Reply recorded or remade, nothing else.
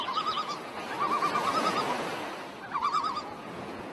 remade